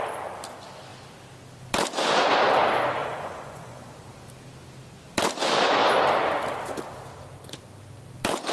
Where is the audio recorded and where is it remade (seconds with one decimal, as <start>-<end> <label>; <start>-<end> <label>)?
0.0-3.0 recorded; 3.0-3.9 remade; 3.9-8.5 recorded